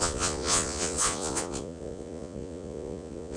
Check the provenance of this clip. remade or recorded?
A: remade